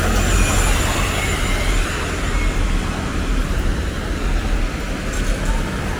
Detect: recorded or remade recorded